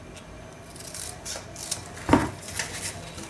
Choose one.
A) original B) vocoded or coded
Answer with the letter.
A